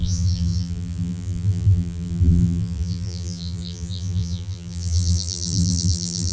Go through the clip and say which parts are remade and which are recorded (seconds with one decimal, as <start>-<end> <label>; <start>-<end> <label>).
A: 0.0-6.3 remade